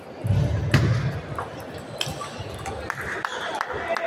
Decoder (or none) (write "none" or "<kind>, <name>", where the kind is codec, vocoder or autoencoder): none